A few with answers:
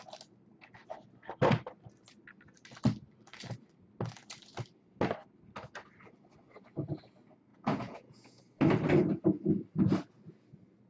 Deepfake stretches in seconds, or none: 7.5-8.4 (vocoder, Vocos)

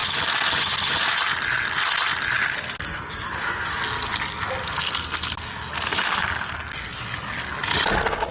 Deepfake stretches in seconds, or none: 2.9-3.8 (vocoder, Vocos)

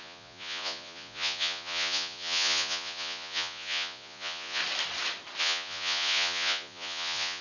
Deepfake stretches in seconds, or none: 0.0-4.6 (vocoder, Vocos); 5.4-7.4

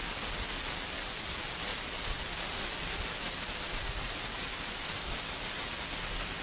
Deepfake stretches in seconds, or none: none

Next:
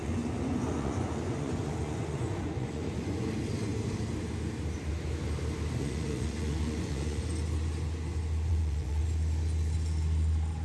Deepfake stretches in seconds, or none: 0.0-3.3 (vocoder, Vocos); 5.8-7.2; 8.5-9.0

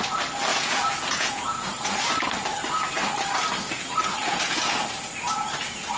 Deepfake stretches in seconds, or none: 0.5-2.0 (vocoder, Vocos); 4.2-4.8

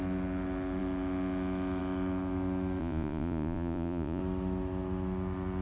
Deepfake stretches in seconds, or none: 2.8-4.2 (vocoder, Vocos)